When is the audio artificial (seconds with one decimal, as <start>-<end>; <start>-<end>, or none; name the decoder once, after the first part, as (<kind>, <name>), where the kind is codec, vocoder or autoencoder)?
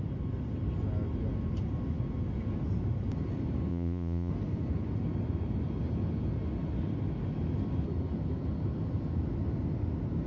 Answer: 3.7-4.3 (vocoder, Vocos)